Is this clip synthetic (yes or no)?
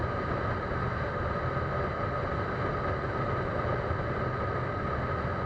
no